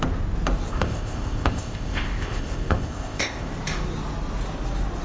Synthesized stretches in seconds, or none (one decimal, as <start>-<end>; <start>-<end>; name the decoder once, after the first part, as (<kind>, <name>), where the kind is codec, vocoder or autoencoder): 0.7-3.5 (codec, ZipCodec)